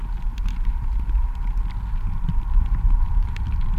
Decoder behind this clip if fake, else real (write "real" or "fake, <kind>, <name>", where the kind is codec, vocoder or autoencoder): real